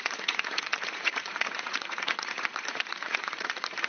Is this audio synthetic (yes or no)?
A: yes